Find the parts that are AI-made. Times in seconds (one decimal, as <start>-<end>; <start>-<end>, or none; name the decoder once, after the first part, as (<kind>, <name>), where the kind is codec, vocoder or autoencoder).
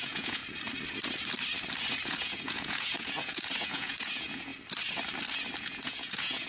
0.0-0.4 (vocoder, Vocos); 2.1-4.5; 5.6-6.5